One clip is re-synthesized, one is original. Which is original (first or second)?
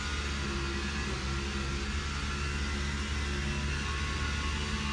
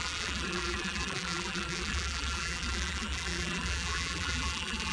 first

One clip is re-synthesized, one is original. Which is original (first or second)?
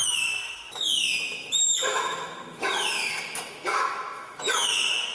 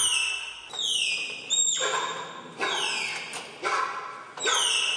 second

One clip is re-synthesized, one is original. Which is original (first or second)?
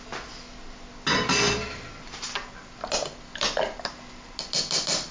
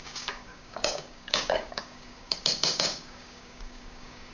first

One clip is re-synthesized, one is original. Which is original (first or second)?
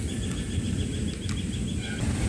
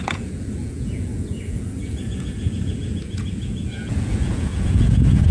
first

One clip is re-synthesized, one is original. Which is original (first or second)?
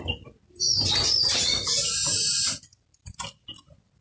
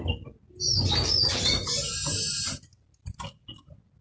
second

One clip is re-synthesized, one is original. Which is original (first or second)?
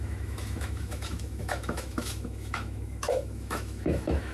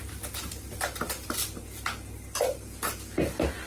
second